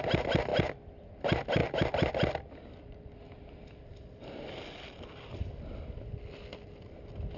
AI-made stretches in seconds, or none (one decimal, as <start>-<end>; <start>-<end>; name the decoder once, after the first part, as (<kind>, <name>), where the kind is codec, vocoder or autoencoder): 1.6-5.4 (vocoder, BigVGAN v2)